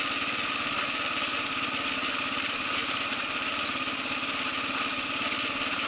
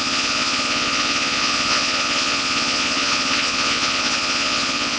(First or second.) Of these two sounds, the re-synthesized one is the second